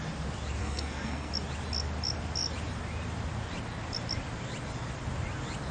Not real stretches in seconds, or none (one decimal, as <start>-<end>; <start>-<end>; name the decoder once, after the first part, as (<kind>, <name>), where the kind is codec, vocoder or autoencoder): 0.6-1.3 (codec, SNAC)